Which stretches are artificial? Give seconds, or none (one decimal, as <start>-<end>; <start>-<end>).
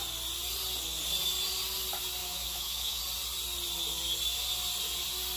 2.2-3.0